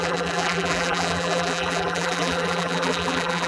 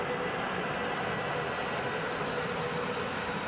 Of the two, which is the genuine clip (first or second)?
second